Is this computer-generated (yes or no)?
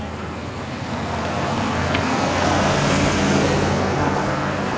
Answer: yes